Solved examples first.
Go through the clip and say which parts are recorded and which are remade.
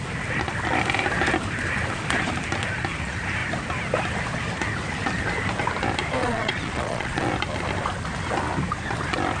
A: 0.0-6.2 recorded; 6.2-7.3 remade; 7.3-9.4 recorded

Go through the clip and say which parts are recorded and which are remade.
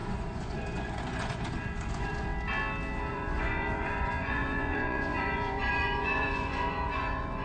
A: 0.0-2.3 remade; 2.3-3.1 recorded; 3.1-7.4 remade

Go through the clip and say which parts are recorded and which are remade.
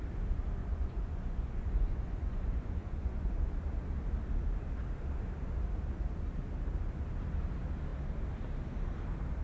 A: 0.0-0.6 recorded; 0.6-3.3 remade; 3.3-9.4 recorded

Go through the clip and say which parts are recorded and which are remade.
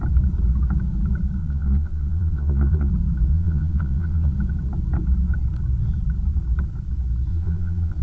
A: 0.0-1.4 recorded; 1.4-2.9 remade; 2.9-3.3 recorded; 3.3-4.3 remade; 4.3-7.3 recorded; 7.3-8.0 remade